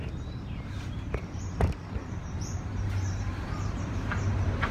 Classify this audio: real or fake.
fake